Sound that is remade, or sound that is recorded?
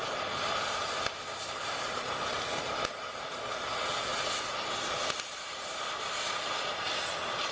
recorded